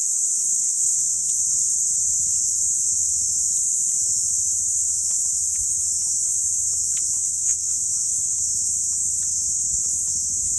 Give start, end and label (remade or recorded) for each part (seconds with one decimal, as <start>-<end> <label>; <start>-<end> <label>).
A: 0.0-0.6 recorded; 0.6-1.3 remade; 1.3-7.2 recorded; 7.2-7.8 remade; 7.8-10.6 recorded